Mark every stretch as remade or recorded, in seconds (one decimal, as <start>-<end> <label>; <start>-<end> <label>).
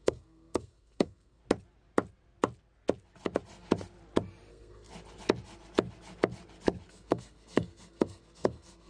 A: 0.0-1.4 remade; 1.4-4.5 recorded; 4.5-4.9 remade; 4.9-6.9 recorded; 6.9-8.9 remade